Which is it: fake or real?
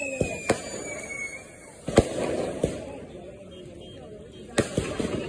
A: real